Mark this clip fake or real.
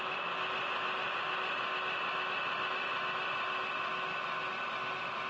real